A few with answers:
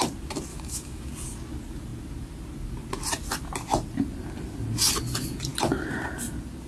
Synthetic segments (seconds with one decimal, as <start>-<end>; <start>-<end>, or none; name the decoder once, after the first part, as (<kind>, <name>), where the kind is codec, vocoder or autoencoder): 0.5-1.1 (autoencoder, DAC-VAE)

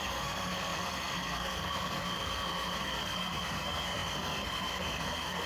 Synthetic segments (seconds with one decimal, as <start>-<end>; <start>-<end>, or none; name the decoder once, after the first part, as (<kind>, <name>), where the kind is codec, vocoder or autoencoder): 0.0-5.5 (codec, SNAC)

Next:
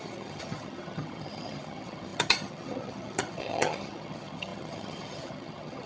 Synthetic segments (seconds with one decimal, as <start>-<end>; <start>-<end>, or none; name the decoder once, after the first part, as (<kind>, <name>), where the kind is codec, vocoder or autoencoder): 0.0-5.9 (vocoder, HiFi-GAN)

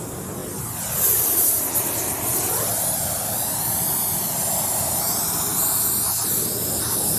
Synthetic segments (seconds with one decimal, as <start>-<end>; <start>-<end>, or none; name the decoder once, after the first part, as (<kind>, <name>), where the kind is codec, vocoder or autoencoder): none

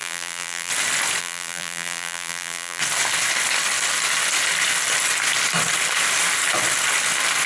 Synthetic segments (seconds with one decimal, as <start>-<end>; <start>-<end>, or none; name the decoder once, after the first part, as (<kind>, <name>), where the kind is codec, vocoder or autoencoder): 0.0-0.7 (vocoder, BigVGAN v2); 1.2-2.8

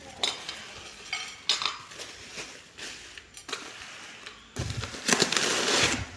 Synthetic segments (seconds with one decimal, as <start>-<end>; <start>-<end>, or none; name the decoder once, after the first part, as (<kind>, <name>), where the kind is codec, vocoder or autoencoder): none